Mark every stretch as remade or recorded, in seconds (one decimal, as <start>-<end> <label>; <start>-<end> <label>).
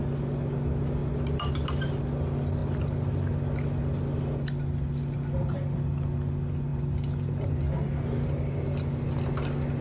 0.0-9.8 recorded